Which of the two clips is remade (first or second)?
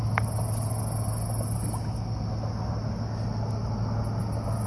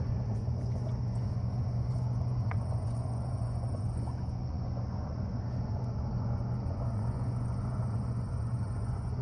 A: second